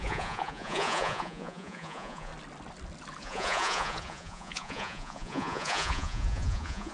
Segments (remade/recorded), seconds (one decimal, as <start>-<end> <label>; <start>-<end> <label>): 0.0-2.3 remade; 2.3-3.2 recorded; 3.2-6.9 remade